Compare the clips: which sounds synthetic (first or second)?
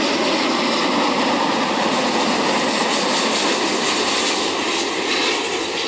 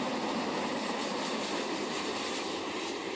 second